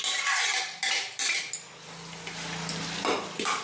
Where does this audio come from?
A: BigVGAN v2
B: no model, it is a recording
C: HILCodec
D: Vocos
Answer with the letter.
B